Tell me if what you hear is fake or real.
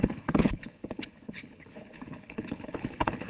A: fake